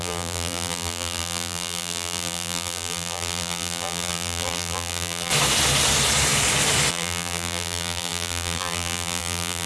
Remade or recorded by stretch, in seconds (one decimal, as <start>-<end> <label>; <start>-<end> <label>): 0.0-5.3 remade; 5.3-6.9 recorded; 6.9-9.7 remade